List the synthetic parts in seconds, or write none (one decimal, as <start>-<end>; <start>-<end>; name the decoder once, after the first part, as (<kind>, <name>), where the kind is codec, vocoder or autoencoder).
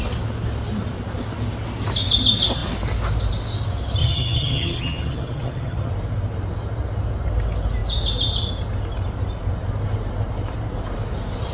4.0-5.9 (vocoder, HiFi-GAN)